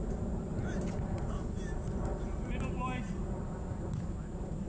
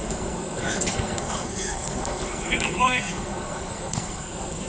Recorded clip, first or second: first